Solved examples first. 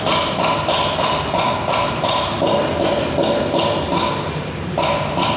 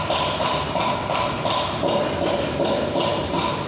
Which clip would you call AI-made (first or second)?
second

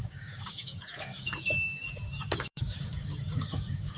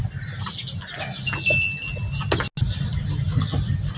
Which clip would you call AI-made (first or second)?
first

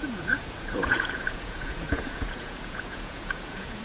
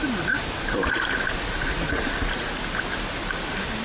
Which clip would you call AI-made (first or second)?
first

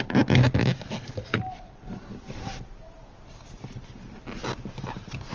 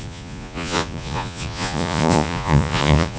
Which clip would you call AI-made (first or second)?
second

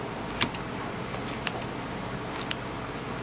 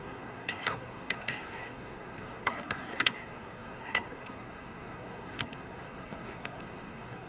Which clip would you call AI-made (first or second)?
second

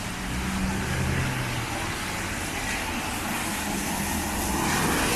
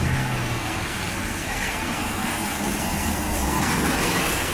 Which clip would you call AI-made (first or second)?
second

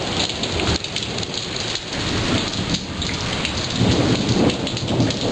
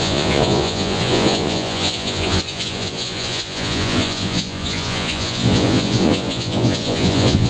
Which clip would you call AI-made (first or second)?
second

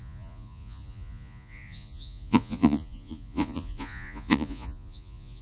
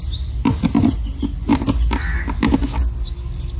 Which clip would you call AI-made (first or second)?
first